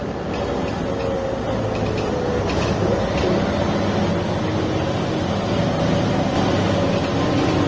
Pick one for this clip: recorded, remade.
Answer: recorded